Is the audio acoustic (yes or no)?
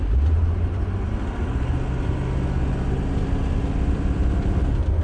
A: yes